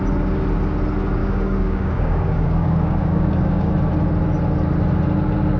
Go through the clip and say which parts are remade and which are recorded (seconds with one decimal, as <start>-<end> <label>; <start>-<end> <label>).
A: 0.0-1.2 recorded; 1.2-3.7 remade; 3.7-5.6 recorded